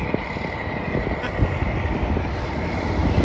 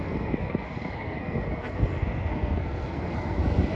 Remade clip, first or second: second